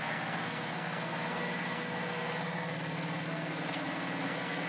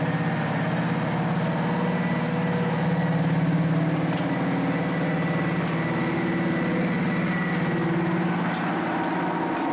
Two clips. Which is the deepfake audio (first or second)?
first